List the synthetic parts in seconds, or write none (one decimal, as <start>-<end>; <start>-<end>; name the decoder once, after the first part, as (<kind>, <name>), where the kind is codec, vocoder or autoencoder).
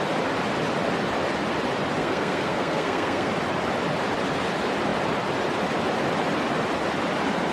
2.0-3.3 (codec, SNAC)